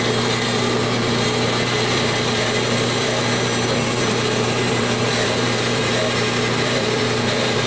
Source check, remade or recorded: remade